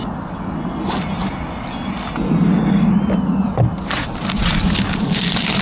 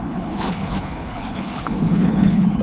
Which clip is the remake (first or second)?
second